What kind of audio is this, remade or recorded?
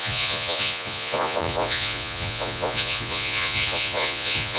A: remade